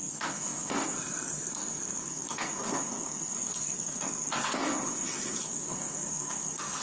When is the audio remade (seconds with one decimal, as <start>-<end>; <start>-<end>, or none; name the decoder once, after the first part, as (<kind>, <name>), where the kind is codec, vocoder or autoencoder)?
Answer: 0.0-6.8 (codec, SNAC)